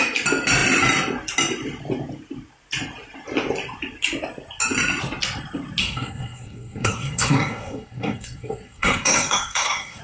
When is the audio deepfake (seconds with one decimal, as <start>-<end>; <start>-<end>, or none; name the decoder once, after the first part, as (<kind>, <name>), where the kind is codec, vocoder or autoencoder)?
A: 5.8-10.0 (codec, SNAC)